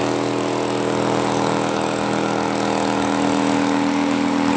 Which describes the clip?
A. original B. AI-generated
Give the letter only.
B